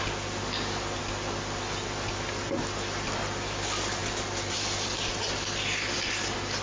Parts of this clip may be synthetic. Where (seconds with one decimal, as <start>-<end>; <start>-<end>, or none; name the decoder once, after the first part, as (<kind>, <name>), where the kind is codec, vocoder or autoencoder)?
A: none

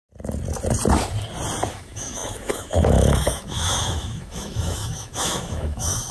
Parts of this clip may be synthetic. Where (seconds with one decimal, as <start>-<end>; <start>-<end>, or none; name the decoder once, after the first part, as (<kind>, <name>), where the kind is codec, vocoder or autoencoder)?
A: 1.7-6.1 (autoencoder, DAC-VAE)

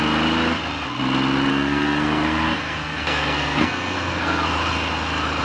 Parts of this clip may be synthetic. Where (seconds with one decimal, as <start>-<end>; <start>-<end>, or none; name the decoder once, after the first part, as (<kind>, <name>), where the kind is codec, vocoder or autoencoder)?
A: 1.5-4.5 (codec, SNAC)

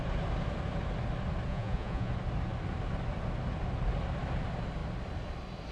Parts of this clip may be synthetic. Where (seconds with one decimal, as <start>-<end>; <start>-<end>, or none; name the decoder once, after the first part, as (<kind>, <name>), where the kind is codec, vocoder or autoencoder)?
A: 1.5-2.1 (vocoder, Vocos)

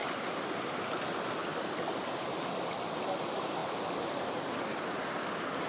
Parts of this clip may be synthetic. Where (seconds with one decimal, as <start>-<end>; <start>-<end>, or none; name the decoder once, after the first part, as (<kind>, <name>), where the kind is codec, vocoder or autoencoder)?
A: 3.6-5.0 (vocoder, BigVGAN v2)